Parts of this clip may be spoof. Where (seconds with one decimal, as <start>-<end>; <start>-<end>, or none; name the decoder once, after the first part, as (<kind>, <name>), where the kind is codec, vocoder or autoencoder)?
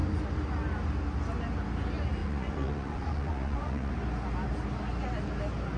2.2-3.9 (vocoder, Vocos)